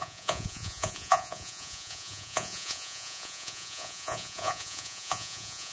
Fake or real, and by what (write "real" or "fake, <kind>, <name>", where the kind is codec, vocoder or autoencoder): fake, vocoder, Vocos